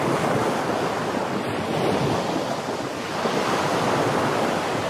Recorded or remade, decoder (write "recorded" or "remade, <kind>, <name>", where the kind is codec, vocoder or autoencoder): recorded